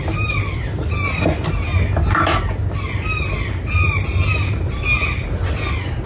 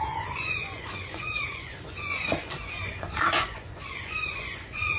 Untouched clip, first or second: first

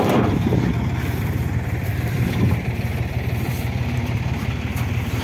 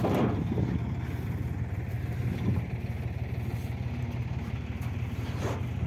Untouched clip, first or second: second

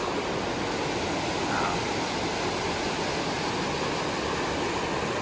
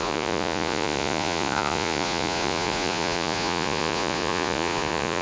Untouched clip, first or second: first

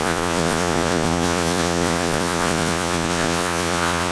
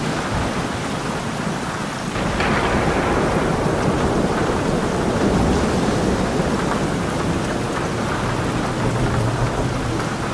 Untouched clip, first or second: second